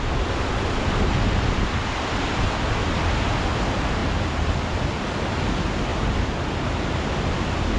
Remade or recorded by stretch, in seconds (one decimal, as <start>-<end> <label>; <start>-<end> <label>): 0.0-7.8 recorded